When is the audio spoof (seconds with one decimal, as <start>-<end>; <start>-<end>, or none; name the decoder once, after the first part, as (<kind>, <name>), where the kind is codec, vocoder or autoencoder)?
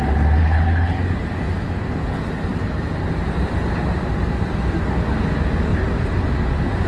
0.4-1.0 (codec, HILCodec)